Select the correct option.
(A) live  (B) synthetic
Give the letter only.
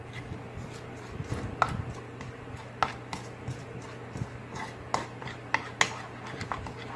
A